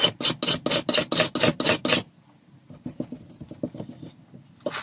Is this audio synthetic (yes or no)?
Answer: no